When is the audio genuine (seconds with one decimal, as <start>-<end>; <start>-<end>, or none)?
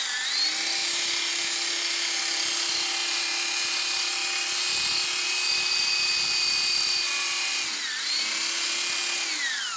0.0-9.8